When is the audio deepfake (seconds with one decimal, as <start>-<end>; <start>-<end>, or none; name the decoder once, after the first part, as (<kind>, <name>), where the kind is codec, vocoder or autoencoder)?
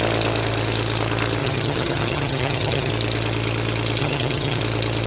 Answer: 1.4-2.9 (vocoder, HiFi-GAN); 4.0-4.6